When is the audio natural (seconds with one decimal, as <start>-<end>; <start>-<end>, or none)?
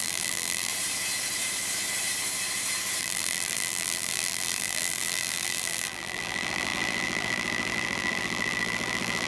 0.7-3.0